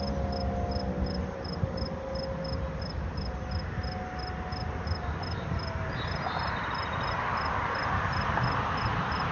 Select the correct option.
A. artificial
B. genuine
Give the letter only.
B